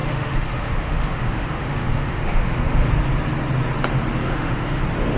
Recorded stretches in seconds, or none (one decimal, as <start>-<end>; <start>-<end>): 2.9-4.2; 4.8-5.2